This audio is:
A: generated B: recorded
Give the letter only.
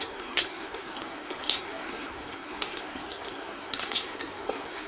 A